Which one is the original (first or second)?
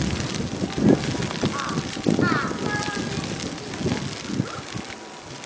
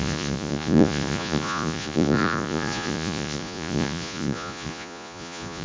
first